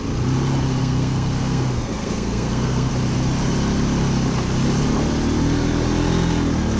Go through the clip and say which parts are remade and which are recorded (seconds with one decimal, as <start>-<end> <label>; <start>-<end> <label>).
0.0-0.8 recorded; 0.8-2.9 remade; 2.9-6.8 recorded